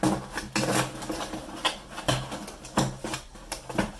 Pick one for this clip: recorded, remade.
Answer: recorded